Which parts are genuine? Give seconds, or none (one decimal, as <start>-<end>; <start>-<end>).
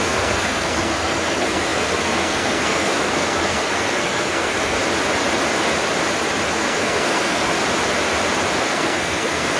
4.8-6.5; 7.5-8.6